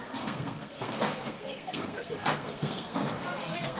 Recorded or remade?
remade